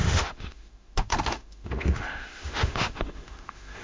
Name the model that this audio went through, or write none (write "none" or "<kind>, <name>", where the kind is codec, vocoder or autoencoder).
autoencoder, DAC-VAE